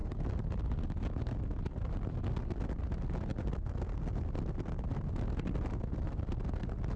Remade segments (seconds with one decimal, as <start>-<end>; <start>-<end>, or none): 0.0-0.6